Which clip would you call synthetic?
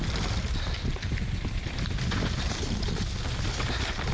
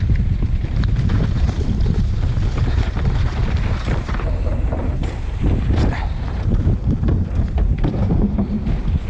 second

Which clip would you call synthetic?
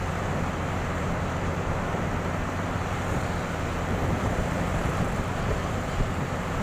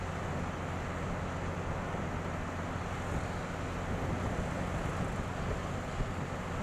first